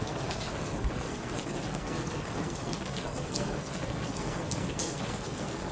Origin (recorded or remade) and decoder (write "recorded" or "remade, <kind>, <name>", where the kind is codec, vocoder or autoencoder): remade, codec, SNAC